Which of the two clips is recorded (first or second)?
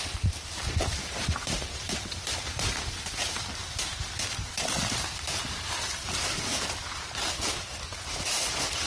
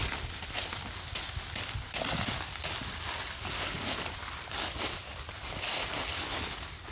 second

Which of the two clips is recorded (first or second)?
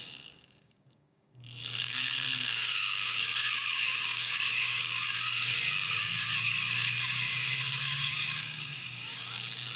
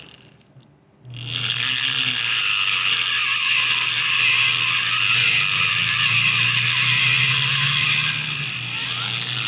second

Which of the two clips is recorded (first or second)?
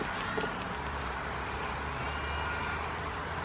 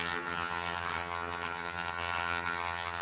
first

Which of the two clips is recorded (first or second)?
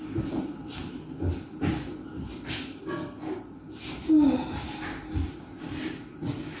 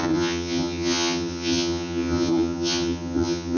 first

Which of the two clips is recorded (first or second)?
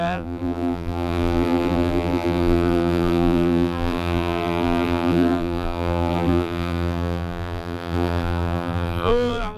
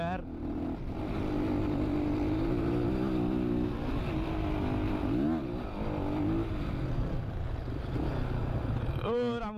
second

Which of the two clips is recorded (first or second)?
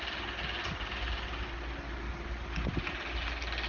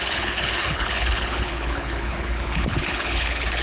first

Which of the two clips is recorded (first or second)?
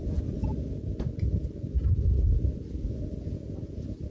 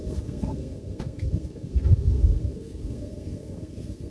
first